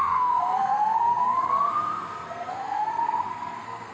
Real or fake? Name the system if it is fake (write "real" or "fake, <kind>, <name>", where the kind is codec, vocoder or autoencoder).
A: fake, codec, SNAC